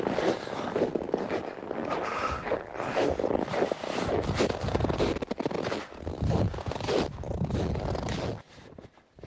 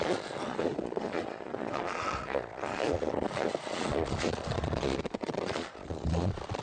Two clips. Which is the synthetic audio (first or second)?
second